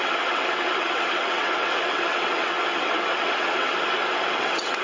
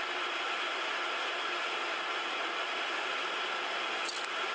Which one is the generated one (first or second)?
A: first